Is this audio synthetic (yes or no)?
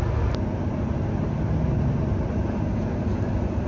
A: no